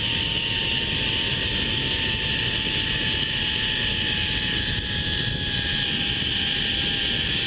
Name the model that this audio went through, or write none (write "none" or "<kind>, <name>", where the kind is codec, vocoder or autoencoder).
none